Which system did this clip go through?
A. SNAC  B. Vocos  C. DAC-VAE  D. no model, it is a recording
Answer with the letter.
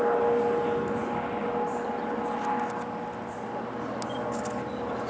D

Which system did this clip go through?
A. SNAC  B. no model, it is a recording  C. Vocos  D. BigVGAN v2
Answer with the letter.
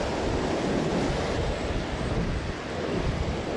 B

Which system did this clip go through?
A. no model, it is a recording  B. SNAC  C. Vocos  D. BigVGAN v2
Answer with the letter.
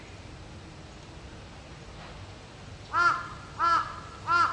A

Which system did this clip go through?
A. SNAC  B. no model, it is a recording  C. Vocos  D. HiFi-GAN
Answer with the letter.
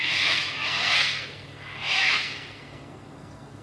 A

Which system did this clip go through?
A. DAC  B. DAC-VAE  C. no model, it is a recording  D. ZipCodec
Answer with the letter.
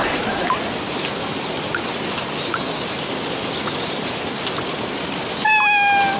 C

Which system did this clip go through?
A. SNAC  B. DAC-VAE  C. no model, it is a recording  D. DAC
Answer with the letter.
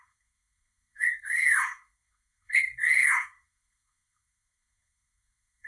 A